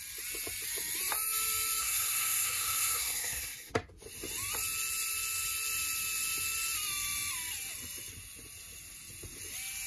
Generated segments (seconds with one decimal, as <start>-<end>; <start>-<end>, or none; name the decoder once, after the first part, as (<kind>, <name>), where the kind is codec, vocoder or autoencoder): 1.8-3.7 (codec, SNAC)